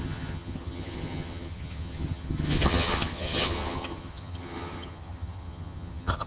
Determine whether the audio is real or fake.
fake